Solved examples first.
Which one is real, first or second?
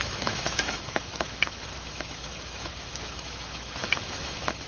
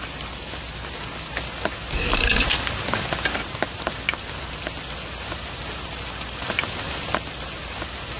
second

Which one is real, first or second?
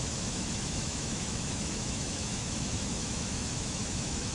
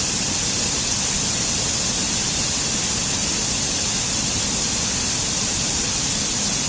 second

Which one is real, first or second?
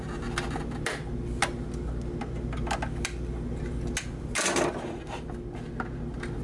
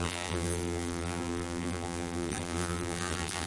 first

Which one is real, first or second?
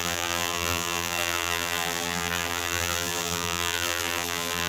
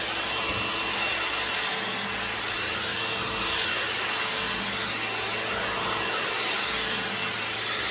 second